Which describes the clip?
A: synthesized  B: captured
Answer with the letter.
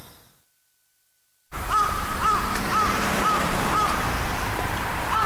A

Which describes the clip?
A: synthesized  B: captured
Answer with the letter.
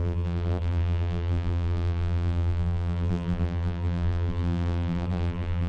A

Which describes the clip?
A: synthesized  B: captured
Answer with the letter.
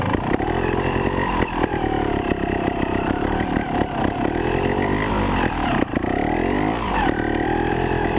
A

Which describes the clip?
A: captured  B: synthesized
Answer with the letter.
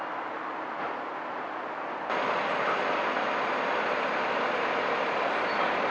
A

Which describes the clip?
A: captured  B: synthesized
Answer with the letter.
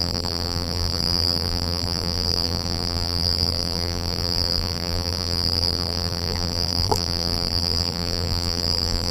B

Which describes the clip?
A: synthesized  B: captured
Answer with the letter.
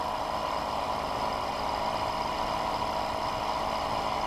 B